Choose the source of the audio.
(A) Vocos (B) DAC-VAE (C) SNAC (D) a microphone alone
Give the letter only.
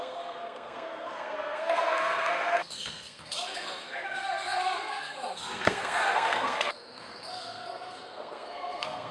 C